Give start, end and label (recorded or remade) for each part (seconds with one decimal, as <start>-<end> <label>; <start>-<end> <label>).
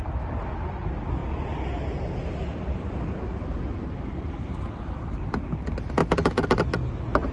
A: 0.0-6.0 recorded; 6.0-6.6 remade; 6.6-7.3 recorded